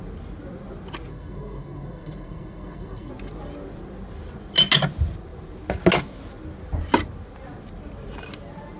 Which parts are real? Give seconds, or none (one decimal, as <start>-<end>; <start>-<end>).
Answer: 0.0-1.1; 3.1-8.8